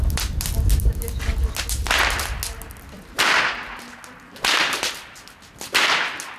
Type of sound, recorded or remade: recorded